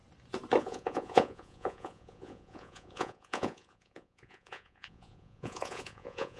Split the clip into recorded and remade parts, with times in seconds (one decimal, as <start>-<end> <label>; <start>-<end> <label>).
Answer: 0.0-0.6 recorded; 0.6-6.4 remade